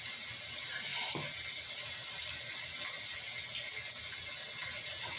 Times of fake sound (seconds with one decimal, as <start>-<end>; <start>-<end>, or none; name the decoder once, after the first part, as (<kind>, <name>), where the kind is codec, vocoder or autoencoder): none